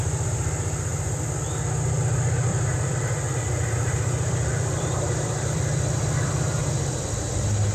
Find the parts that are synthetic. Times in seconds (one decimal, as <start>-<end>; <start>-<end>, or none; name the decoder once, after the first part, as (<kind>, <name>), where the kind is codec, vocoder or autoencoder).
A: 2.5-6.3 (vocoder, BigVGAN v2)